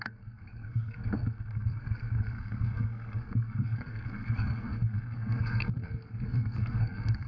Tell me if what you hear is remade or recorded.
remade